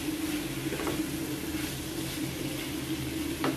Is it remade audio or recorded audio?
recorded